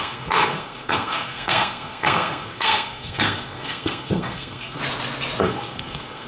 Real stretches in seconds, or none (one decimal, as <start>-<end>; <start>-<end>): 4.8-5.4